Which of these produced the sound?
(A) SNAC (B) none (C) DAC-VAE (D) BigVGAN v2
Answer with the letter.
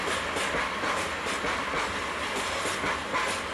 B